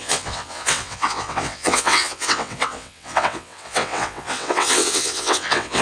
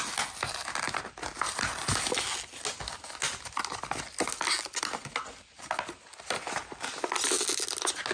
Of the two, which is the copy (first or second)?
first